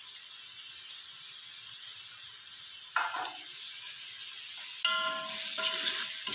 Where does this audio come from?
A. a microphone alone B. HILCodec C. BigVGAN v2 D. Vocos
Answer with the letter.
A